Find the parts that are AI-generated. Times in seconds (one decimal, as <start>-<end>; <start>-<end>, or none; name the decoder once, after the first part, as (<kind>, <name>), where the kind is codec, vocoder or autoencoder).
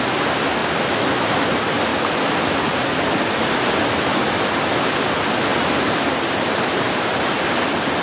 0.6-1.3 (vocoder, BigVGAN v2); 5.5-6.9